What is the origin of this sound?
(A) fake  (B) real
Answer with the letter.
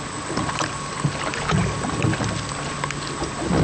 B